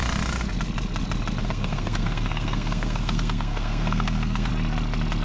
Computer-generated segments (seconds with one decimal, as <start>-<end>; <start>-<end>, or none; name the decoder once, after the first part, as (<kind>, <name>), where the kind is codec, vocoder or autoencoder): 1.4-4.5 (codec, SNAC)